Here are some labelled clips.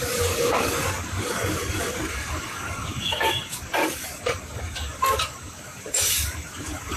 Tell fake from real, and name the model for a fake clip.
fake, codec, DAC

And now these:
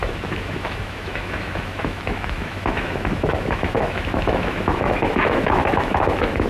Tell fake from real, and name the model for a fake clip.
fake, autoencoder, DAC-VAE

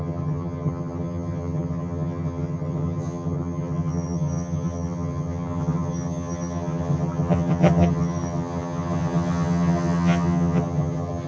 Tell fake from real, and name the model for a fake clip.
fake, vocoder, HiFi-GAN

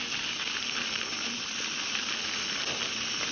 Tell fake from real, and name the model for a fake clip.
real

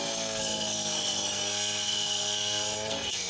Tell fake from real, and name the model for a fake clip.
fake, codec, SNAC